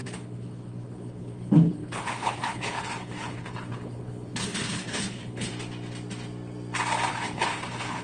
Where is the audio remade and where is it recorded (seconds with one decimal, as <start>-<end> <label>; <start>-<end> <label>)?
0.0-5.5 remade; 5.5-7.1 recorded; 7.1-8.0 remade